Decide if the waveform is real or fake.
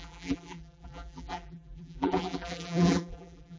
fake